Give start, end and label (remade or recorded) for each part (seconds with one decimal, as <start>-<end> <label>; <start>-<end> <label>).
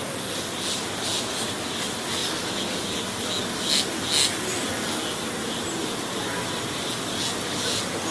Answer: 0.0-8.1 recorded